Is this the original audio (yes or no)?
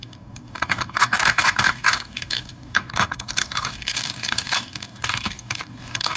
no